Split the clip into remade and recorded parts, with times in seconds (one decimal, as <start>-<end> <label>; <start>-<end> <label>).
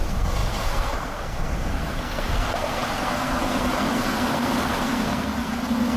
0.0-6.0 remade